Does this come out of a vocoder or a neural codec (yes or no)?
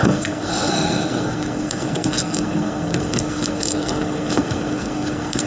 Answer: yes